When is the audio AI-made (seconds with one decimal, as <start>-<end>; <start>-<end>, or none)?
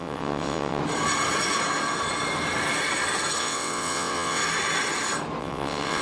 0.0-0.8; 3.4-4.4; 5.4-6.0